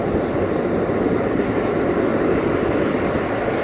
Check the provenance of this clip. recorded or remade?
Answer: recorded